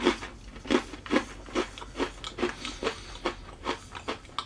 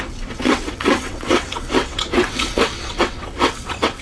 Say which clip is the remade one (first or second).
second